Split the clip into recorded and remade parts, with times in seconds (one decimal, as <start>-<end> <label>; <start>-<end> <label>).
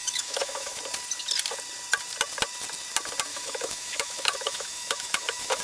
0.0-0.8 remade; 0.8-3.3 recorded; 3.3-5.6 remade